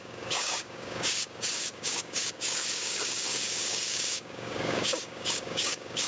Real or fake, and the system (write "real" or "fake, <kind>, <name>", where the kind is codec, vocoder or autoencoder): fake, codec, DAC